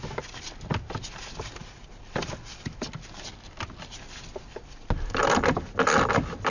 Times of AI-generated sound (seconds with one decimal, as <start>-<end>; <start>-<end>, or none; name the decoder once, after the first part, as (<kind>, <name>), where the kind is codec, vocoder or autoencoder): none